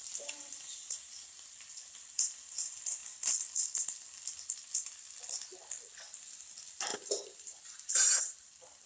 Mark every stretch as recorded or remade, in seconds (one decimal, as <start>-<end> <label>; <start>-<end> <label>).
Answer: 0.0-6.9 recorded; 6.9-8.5 remade; 8.5-8.9 recorded